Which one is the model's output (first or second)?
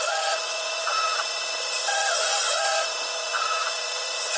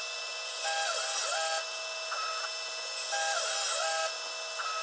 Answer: first